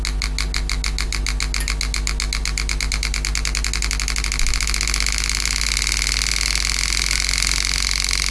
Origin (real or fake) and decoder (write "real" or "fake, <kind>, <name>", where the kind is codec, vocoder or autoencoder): real